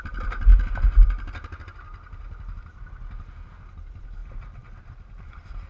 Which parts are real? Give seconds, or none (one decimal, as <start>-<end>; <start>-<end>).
0.0-5.7